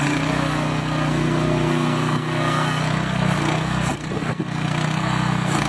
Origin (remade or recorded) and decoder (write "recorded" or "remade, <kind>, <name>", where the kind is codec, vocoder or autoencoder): remade, codec, SNAC